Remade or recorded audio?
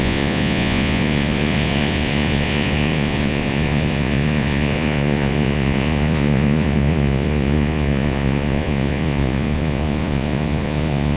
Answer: remade